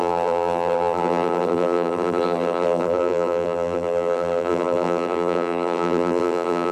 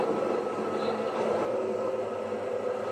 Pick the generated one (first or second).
first